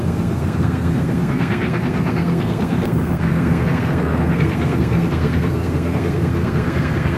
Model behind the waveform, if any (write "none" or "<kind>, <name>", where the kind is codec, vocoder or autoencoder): codec, SNAC